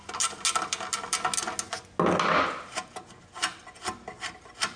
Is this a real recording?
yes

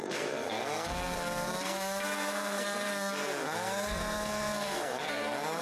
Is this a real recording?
no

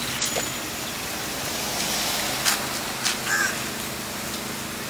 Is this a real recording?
yes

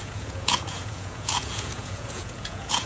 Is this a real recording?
no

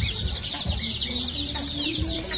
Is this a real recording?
no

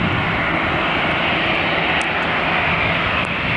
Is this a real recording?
yes